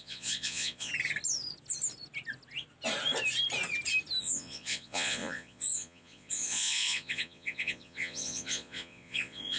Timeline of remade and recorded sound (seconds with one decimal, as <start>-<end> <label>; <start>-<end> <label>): 0.0-0.9 remade; 0.9-4.2 recorded; 4.2-9.6 remade